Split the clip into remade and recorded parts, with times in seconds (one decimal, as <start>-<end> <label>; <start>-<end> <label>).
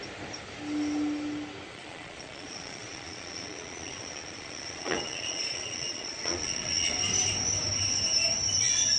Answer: 0.0-1.7 recorded; 1.7-6.9 remade; 6.9-9.0 recorded